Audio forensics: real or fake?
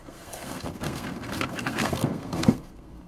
fake